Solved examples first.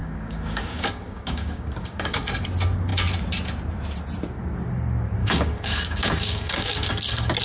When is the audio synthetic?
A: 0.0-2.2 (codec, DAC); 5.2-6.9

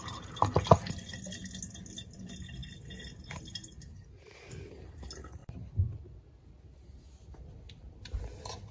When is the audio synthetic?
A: none

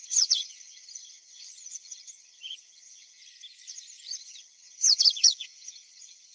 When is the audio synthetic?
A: 0.0-3.2 (vocoder, HiFi-GAN); 4.2-6.3

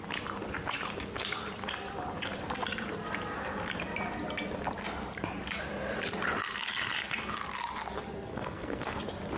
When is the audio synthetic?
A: 8.3-9.0 (codec, SNAC)

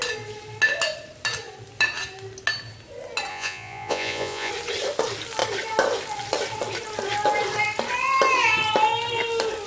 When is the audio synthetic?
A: 3.3-4.5 (vocoder, Vocos)

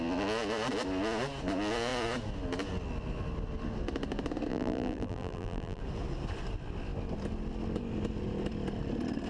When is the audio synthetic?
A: 4.5-5.8 (vocoder, BigVGAN v2)

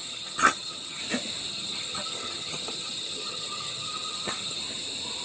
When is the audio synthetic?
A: 0.0-1.0 (vocoder, HiFi-GAN); 1.5-4.6

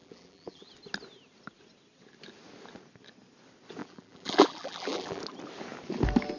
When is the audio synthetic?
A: 0.0-0.7 (vocoder, BigVGAN v2); 3.8-5.2